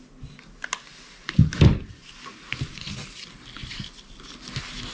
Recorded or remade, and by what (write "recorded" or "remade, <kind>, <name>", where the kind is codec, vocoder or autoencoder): recorded